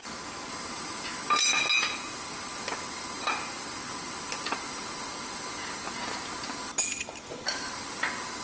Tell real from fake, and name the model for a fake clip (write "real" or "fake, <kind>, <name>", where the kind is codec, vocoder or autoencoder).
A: real